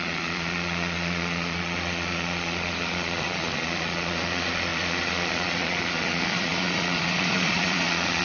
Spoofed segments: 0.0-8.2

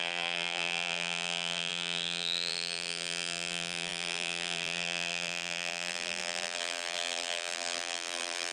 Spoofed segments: 0.0-8.5

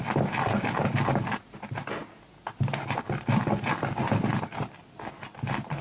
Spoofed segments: none